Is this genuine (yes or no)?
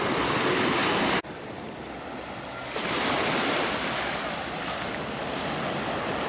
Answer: yes